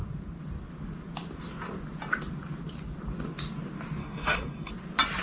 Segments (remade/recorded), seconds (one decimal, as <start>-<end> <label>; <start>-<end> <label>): 0.0-4.0 recorded; 4.0-4.7 remade; 4.7-5.2 recorded